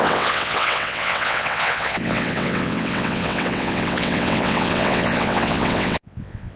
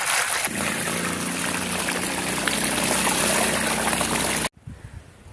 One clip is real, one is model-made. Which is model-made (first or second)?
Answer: first